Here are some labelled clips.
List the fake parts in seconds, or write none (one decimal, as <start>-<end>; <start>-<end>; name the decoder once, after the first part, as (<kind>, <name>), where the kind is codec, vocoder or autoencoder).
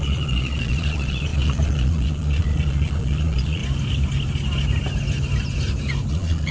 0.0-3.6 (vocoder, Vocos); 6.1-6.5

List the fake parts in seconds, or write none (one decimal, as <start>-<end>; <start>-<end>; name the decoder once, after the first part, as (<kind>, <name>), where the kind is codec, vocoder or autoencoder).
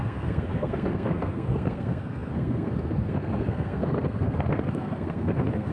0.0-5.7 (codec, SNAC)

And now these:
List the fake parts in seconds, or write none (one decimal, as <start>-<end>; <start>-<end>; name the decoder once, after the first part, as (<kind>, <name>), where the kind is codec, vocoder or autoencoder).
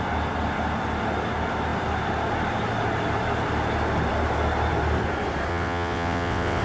5.5-6.6 (vocoder, WaveNeXt)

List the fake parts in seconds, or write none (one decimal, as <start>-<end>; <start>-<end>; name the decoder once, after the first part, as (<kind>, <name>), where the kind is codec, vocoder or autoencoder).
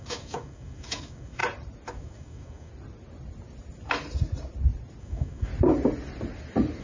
0.0-1.4 (autoencoder, DAC-VAE); 1.9-2.7; 5.0-5.5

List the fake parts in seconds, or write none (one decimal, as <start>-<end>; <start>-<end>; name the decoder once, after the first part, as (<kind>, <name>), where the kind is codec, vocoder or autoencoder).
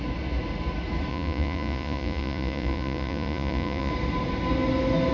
1.1-3.9 (vocoder, Vocos)